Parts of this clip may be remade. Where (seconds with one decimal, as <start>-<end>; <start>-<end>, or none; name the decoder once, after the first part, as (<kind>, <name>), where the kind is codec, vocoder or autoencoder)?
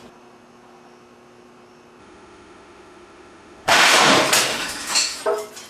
2.0-4.1 (autoencoder, DAC-VAE); 4.5-5.2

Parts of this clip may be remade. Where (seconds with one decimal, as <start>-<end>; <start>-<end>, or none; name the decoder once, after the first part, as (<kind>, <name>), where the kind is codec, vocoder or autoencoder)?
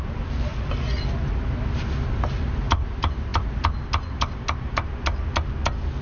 none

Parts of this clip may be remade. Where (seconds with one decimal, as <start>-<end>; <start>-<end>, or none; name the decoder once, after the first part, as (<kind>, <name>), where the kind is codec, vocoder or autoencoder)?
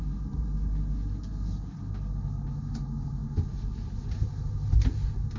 none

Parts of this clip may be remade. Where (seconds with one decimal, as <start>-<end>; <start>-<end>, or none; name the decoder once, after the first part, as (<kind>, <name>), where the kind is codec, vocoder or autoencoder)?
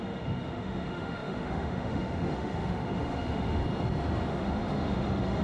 0.0-3.6 (autoencoder, DAC-VAE); 4.3-5.4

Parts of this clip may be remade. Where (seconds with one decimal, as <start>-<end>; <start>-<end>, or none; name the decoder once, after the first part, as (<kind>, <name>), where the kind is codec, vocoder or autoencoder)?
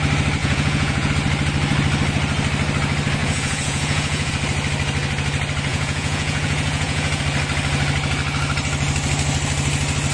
0.4-1.1 (vocoder, Vocos); 3.2-4.3; 5.7-7.2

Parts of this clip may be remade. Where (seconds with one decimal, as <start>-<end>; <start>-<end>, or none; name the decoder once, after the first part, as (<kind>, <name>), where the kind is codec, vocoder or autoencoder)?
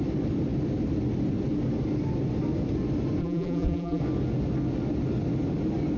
3.2-4.0 (vocoder, BigVGAN v2)